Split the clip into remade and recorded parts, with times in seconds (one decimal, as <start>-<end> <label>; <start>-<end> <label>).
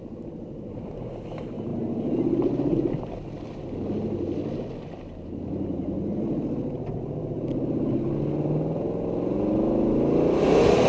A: 0.0-10.9 recorded